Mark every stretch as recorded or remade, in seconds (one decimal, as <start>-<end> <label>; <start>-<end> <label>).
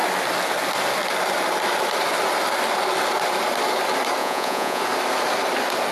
0.0-4.2 recorded; 4.2-4.8 remade; 4.8-5.9 recorded